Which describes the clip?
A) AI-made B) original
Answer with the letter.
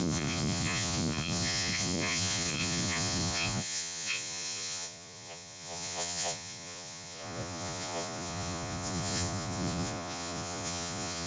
A